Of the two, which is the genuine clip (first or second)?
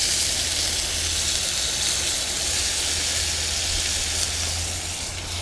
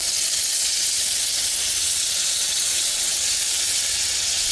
first